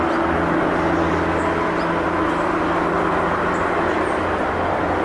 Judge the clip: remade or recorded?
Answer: recorded